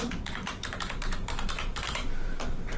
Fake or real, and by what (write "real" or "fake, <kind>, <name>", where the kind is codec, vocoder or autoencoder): fake, vocoder, BigVGAN v2